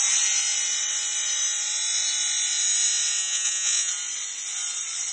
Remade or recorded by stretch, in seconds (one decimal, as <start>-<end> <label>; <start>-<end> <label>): 0.0-3.2 recorded; 3.2-3.9 remade; 3.9-5.1 recorded